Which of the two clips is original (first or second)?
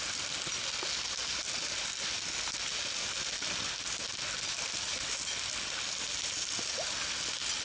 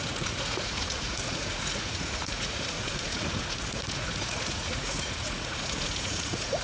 first